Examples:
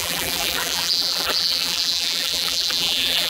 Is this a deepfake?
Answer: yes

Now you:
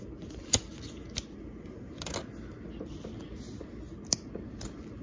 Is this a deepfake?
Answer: no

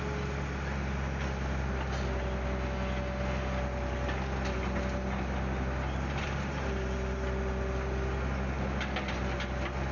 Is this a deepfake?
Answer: no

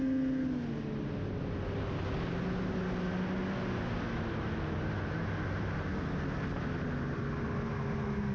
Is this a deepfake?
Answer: no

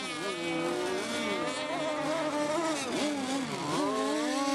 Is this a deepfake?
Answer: no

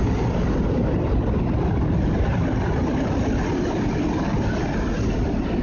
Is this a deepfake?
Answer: yes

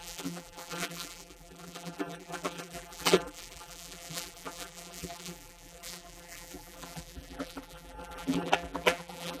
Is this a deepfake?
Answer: yes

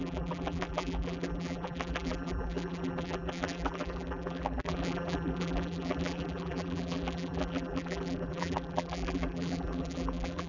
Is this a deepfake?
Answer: yes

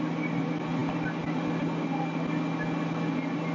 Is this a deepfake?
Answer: no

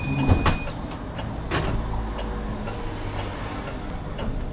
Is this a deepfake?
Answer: no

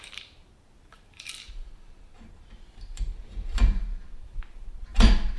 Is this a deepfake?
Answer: yes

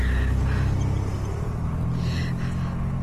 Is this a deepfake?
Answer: no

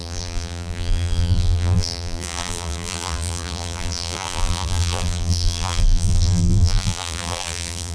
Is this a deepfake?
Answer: yes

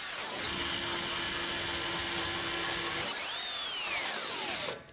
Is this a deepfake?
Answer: no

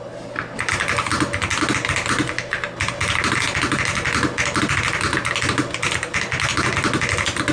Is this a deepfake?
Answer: no